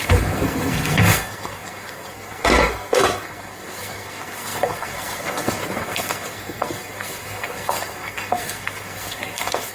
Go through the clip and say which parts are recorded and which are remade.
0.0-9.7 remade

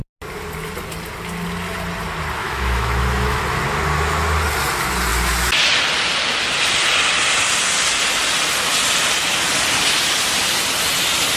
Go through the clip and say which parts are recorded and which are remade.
0.0-2.4 recorded; 2.4-3.4 remade; 3.4-11.4 recorded

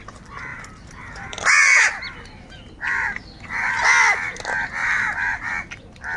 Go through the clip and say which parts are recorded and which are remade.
0.0-0.5 recorded; 0.5-3.7 remade; 3.7-4.8 recorded; 4.8-5.5 remade; 5.5-6.2 recorded

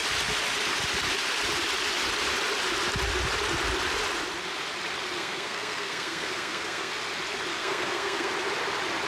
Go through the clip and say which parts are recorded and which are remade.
0.0-5.2 recorded; 5.2-6.9 remade; 6.9-7.5 recorded; 7.5-8.3 remade; 8.3-9.1 recorded